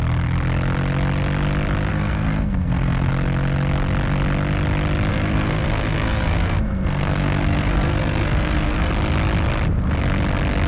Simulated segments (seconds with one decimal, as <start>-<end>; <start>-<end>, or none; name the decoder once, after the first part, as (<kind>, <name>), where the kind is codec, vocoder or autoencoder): 1.9-3.1 (codec, SNAC); 5.1-8.9

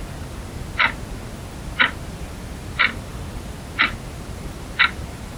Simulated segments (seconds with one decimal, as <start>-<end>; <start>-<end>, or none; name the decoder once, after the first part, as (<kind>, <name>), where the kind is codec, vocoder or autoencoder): 3.1-3.6 (vocoder, BigVGAN v2)